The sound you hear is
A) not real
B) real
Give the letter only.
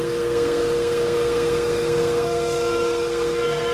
A